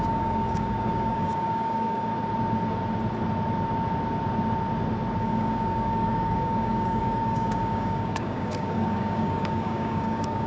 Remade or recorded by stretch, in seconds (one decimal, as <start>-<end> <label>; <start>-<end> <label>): 0.0-2.1 remade; 2.1-5.2 recorded; 5.2-10.5 remade